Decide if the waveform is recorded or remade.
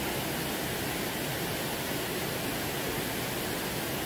recorded